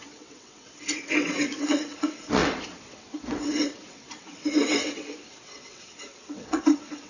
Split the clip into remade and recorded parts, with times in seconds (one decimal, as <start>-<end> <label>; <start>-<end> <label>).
0.0-7.1 remade